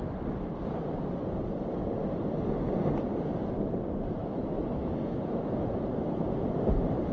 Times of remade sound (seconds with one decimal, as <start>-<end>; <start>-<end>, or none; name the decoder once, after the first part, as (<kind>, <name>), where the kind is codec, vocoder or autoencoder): 4.2-5.8 (autoencoder, DAC-VAE)